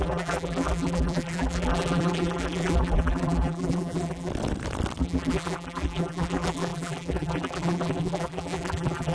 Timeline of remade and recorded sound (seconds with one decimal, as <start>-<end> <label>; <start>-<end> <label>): 0.0-4.3 remade; 4.3-5.0 recorded; 5.0-9.1 remade